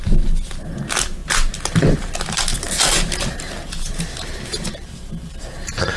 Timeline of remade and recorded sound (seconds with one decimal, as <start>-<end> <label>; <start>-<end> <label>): 0.0-6.0 recorded